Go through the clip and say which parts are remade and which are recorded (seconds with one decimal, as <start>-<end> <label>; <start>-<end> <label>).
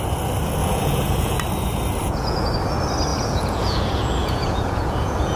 0.0-0.6 recorded; 0.6-1.4 remade; 1.4-2.0 recorded; 2.0-2.5 remade; 2.5-3.1 recorded; 3.1-5.4 remade